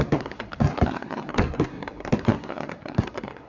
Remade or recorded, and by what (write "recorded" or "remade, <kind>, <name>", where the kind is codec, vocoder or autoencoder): remade, codec, SNAC